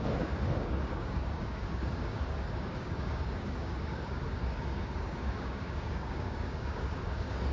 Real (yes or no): no